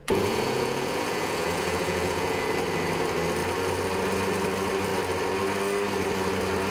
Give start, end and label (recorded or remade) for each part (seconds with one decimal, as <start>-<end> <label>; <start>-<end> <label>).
0.0-2.5 remade; 2.5-6.7 recorded